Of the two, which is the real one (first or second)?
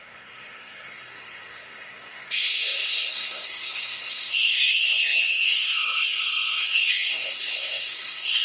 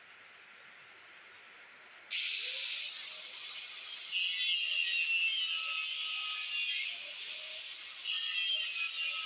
second